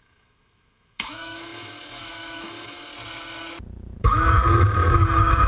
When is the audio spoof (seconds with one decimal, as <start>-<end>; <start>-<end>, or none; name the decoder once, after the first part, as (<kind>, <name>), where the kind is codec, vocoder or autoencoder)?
0.0-2.9 (autoencoder, DAC-VAE); 4.0-5.5

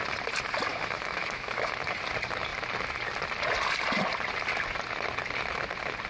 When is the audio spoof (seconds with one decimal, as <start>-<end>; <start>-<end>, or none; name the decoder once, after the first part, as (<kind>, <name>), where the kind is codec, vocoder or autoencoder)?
0.7-1.7 (autoencoder, DAC-VAE)